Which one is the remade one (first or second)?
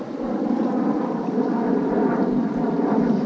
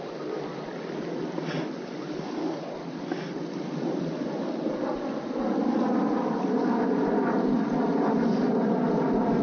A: first